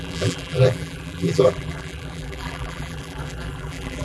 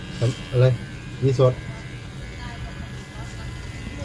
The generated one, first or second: first